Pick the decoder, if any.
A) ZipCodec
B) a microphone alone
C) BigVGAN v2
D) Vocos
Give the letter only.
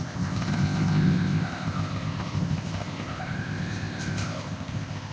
A